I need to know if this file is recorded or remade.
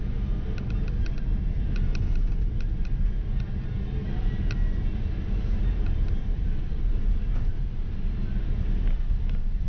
recorded